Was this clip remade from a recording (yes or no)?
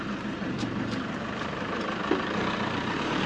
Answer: yes